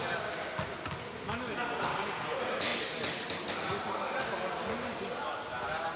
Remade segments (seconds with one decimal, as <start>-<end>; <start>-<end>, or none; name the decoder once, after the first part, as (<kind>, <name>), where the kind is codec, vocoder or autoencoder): none